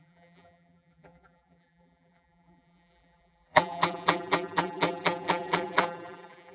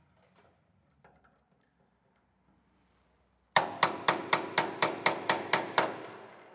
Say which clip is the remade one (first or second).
first